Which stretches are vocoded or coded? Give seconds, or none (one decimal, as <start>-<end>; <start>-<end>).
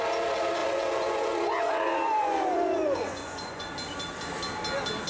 0.6-3.7